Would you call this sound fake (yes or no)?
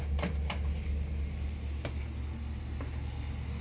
no